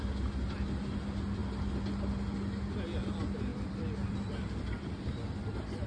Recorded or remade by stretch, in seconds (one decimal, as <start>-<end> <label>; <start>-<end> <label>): 0.0-3.5 recorded; 3.5-5.9 remade